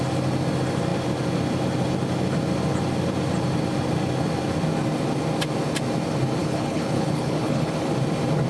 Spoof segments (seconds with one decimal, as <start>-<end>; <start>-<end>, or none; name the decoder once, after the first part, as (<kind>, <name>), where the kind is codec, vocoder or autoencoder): 6.4-7.7 (codec, HILCodec)